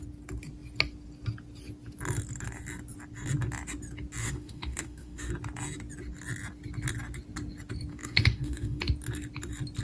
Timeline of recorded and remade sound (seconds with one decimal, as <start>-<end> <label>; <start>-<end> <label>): 0.0-4.2 recorded; 4.2-5.3 remade; 5.3-7.9 recorded; 7.9-8.8 remade; 8.8-9.8 recorded